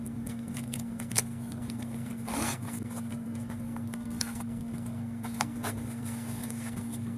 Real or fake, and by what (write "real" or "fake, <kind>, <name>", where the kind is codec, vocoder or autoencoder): fake, codec, SNAC